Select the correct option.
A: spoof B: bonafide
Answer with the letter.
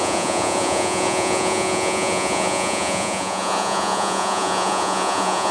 A